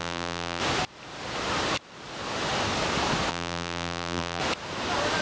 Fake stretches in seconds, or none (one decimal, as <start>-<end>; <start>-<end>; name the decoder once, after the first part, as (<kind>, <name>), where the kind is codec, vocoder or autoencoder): 0.0-0.6 (vocoder, BigVGAN v2); 3.3-4.4